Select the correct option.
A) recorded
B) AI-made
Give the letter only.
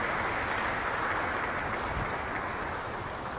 A